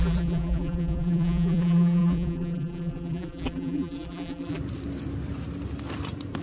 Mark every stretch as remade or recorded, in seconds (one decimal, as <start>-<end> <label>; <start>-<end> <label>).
0.0-4.6 remade; 4.6-6.4 recorded